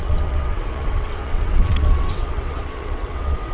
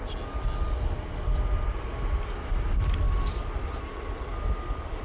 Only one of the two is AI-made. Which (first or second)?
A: first